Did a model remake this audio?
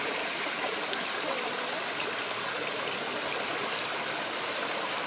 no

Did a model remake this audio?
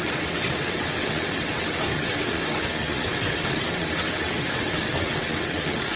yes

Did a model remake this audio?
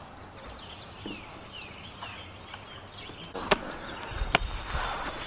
no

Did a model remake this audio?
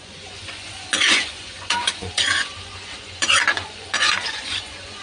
yes